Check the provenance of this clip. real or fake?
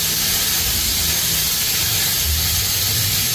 real